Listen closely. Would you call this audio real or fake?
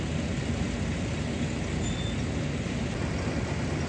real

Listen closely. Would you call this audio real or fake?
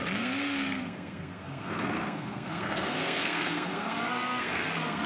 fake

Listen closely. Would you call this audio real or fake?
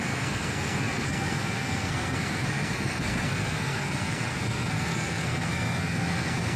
fake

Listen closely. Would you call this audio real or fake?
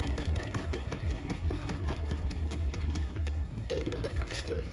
fake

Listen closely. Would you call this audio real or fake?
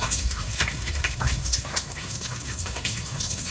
fake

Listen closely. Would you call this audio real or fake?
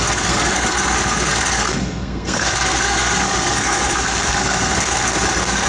fake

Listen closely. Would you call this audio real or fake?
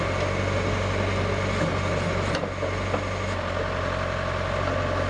real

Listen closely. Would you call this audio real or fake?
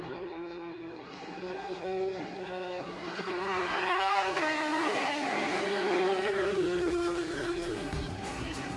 fake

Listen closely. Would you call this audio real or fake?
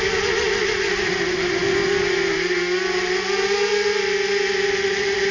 real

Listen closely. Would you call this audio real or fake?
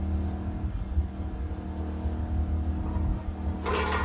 real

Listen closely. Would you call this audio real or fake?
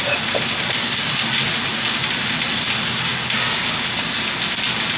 real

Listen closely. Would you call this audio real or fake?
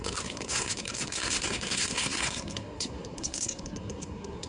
fake